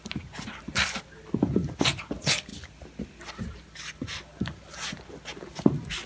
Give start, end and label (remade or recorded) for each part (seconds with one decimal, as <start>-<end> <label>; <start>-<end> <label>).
0.0-6.1 recorded